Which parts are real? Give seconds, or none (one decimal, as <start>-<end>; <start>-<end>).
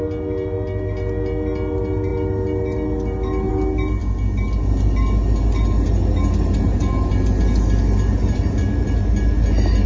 0.0-9.9